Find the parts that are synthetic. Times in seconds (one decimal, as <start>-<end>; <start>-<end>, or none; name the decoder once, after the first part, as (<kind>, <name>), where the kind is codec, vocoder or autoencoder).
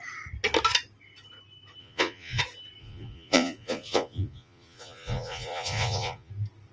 1.8-2.4 (vocoder, Vocos); 2.8-6.3